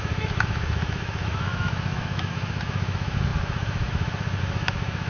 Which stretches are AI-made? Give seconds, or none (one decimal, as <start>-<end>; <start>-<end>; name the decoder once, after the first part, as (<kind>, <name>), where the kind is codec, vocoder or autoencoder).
0.0-5.1 (autoencoder, DAC-VAE)

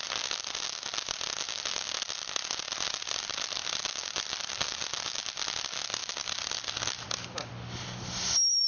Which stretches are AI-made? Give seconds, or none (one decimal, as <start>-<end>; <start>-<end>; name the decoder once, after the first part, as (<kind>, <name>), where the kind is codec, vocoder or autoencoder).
4.0-4.5 (vocoder, BigVGAN v2); 6.0-7.5

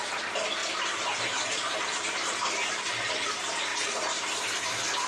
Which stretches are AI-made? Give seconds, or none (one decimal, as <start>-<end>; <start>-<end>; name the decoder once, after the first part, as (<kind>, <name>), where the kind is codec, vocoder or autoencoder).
3.7-4.4 (vocoder, BigVGAN v2)

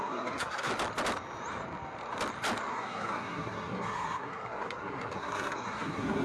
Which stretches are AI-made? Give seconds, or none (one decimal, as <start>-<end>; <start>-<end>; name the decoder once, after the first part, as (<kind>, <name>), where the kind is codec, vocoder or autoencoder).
0.0-0.7 (codec, SNAC); 2.7-6.2

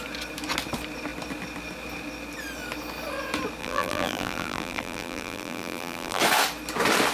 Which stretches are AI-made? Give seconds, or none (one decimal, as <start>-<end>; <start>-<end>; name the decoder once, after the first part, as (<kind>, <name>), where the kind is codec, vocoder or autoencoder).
3.6-6.2 (vocoder, BigVGAN v2)

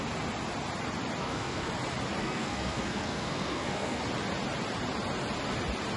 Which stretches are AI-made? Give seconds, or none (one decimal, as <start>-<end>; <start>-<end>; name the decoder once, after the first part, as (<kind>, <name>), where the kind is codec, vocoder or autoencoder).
1.2-1.7 (codec, SNAC); 2.2-4.0

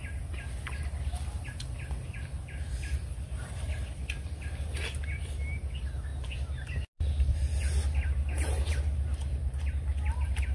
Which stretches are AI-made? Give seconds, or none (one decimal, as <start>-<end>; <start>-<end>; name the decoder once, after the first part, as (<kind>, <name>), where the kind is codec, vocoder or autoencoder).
none

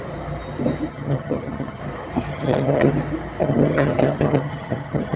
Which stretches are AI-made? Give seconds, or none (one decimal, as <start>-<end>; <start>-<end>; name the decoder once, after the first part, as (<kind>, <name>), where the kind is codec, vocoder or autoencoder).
0.9-1.8 (vocoder, HiFi-GAN); 2.3-2.9; 3.4-5.2